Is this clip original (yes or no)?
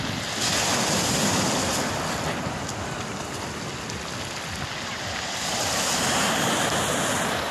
yes